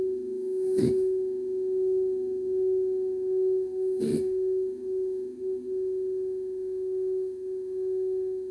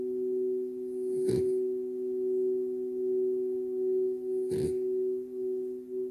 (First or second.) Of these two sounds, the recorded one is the second